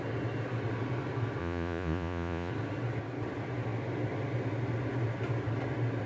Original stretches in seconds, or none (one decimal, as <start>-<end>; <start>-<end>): 0.0-1.4; 2.5-6.1